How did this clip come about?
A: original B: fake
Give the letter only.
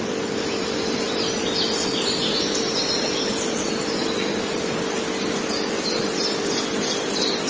A